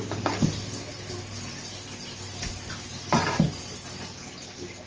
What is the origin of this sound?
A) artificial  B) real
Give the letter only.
B